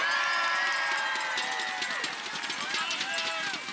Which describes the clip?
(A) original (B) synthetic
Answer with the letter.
A